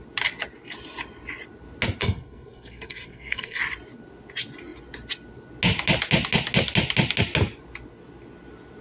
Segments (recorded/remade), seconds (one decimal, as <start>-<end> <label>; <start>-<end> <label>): 0.0-2.0 recorded; 2.0-3.6 remade; 3.6-8.8 recorded